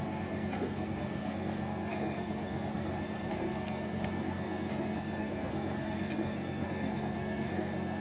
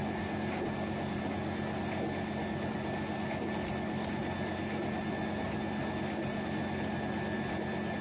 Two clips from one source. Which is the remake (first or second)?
first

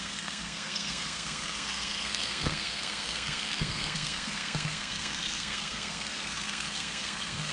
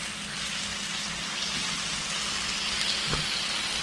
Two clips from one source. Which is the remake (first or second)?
first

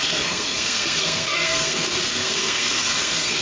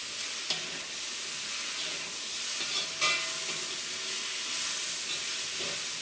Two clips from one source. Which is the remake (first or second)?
first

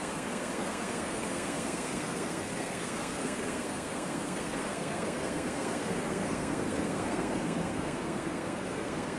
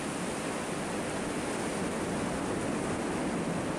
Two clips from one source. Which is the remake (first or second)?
first